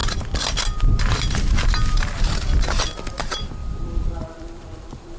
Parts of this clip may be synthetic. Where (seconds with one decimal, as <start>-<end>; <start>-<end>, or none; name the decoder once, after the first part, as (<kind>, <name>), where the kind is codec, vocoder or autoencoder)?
2.6-5.2 (vocoder, BigVGAN v2)